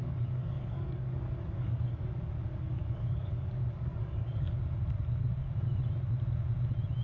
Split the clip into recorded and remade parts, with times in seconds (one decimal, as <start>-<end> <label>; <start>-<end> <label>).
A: 0.0-2.1 remade; 2.1-2.5 recorded; 2.5-4.6 remade; 4.6-7.0 recorded